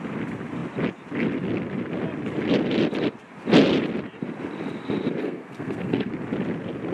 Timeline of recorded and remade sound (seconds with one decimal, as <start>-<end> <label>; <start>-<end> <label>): 0.0-5.2 recorded; 5.2-6.1 remade; 6.1-6.9 recorded